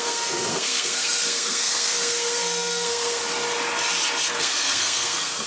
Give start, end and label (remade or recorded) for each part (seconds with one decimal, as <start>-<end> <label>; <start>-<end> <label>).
0.0-3.2 remade; 3.2-4.3 recorded; 4.3-5.5 remade